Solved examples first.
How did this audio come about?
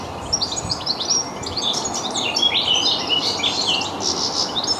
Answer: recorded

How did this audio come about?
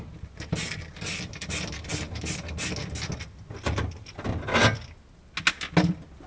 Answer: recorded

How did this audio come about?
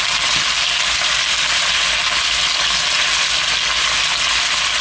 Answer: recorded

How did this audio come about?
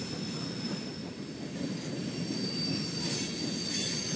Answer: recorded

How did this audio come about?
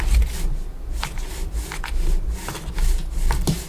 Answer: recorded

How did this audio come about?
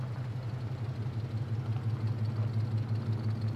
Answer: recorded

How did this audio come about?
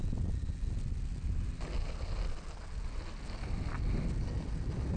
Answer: recorded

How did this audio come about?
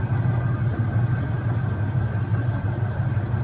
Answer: recorded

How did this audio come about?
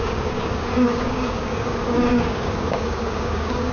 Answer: remade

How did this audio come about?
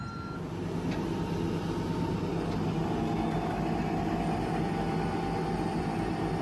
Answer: recorded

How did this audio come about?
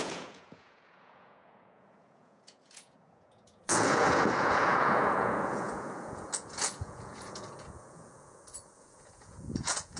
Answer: remade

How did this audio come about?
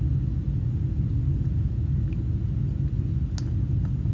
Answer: recorded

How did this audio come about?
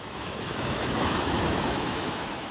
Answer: remade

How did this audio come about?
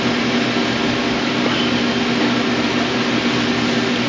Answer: recorded